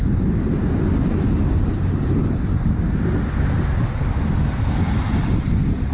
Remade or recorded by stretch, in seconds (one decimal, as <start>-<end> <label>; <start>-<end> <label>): 0.0-5.9 recorded